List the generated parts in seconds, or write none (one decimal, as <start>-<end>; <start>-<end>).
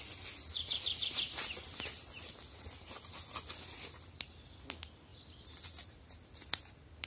none